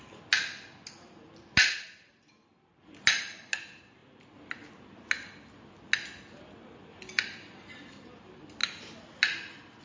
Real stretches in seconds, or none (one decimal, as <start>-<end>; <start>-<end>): 0.0-9.8